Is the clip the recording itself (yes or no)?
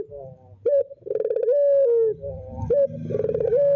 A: yes